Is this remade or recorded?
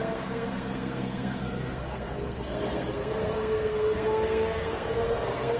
remade